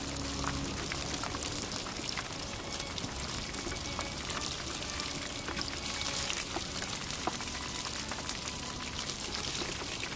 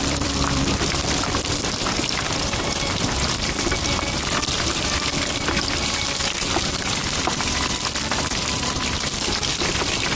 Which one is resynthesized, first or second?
second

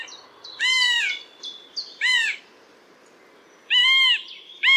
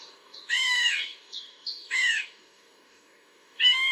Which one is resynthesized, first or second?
second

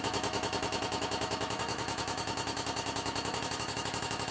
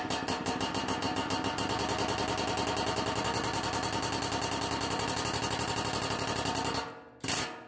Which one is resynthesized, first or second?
first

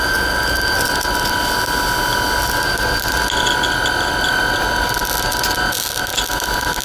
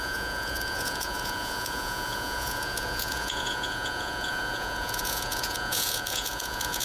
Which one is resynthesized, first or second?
second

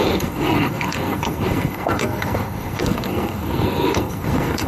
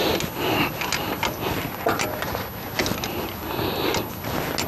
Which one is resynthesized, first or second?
first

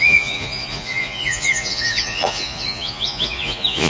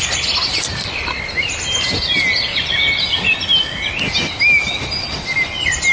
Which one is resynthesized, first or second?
first